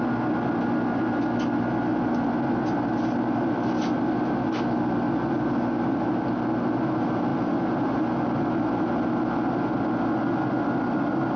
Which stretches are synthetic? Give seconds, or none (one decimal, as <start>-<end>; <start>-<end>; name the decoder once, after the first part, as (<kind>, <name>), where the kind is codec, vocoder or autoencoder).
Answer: none